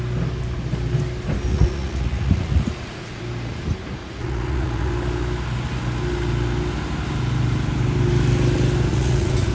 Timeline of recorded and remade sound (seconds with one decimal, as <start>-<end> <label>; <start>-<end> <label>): 0.0-1.5 recorded; 1.5-3.2 remade; 3.2-4.0 recorded; 4.0-4.9 remade; 4.9-8.9 recorded; 8.9-9.5 remade